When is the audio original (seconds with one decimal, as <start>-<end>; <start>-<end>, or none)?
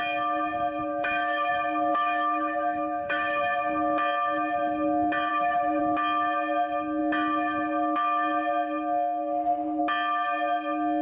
0.0-0.9; 1.5-1.9; 3.4-5.3; 5.8-11.0